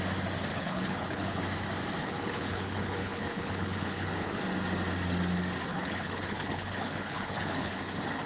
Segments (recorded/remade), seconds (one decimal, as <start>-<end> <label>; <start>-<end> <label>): 0.0-0.5 recorded; 0.5-1.4 remade; 1.4-2.0 recorded; 2.0-4.4 remade; 4.4-5.7 recorded; 5.7-7.8 remade; 7.8-8.3 recorded